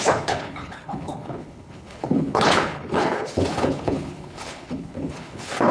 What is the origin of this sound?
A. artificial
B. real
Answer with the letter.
A